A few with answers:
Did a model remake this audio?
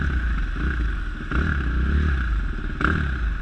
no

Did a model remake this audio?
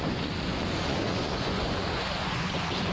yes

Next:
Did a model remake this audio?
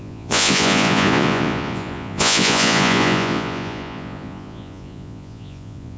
yes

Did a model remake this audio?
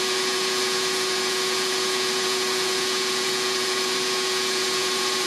yes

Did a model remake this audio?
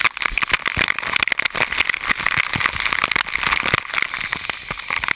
no